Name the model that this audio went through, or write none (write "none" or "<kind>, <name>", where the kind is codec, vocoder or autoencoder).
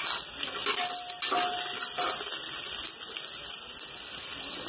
none